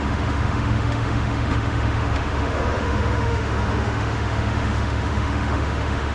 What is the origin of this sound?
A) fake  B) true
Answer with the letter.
A